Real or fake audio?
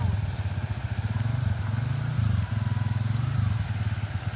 real